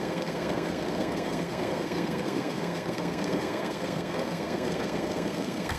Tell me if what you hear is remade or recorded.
remade